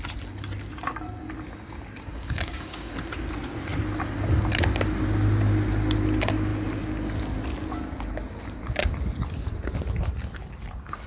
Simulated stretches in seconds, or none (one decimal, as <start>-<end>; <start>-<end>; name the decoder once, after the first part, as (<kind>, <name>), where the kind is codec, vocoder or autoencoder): 2.1-2.9 (codec, DAC)